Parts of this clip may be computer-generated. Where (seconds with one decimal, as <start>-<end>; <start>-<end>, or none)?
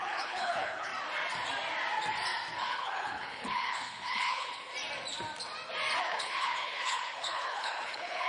0.0-0.9; 2.6-4.7; 6.0-8.3